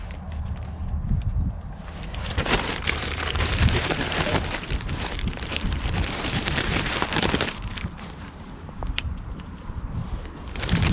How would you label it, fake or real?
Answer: fake